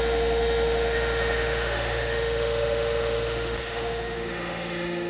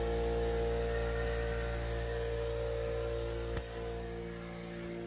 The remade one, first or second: first